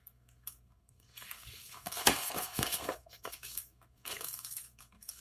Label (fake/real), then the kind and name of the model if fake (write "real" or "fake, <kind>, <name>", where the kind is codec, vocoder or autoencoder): fake, codec, SNAC